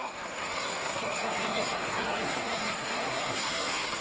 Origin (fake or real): fake